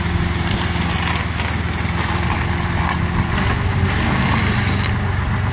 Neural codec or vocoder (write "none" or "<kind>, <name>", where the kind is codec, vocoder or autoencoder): none